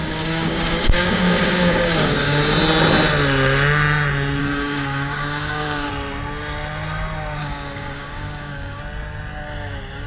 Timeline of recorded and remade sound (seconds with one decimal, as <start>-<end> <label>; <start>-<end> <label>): 0.0-2.4 remade; 2.4-4.4 recorded; 4.4-5.9 remade; 5.9-7.4 recorded; 7.4-8.8 remade; 8.8-10.1 recorded